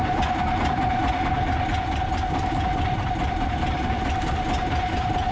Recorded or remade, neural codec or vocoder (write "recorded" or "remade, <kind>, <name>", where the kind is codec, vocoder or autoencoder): recorded